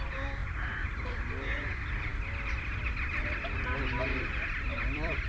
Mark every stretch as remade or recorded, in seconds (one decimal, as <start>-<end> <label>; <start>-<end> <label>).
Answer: 0.0-4.7 recorded; 4.7-5.3 remade